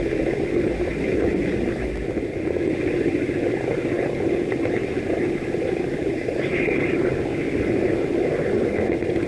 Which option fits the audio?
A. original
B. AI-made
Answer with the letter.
A